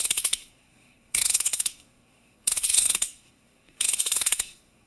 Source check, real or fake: fake